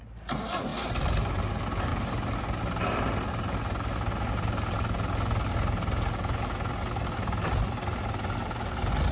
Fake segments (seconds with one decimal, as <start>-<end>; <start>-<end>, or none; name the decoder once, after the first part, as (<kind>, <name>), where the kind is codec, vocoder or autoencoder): none